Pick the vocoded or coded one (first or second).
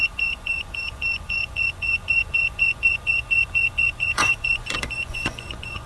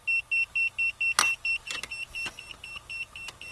first